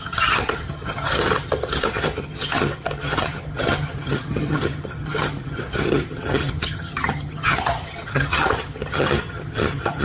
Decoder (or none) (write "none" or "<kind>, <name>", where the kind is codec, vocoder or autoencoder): vocoder, HiFi-GAN